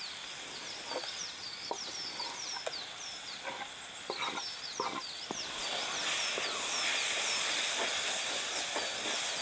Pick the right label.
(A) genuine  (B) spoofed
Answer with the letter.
A